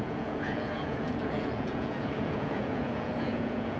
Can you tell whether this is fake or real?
fake